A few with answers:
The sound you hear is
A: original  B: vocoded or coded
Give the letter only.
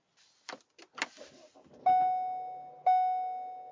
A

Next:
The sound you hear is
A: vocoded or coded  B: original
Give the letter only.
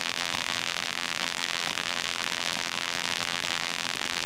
A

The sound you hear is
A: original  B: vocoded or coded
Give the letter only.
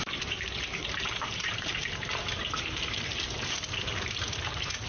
B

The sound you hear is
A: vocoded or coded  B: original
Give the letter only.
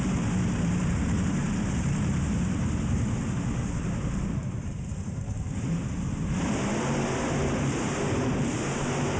A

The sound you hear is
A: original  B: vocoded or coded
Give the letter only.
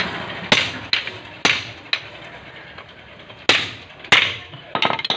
A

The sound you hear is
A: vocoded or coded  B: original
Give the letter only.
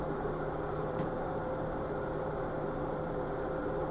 A